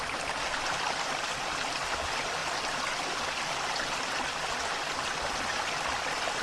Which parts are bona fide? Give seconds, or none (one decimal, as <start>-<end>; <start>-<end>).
0.0-6.4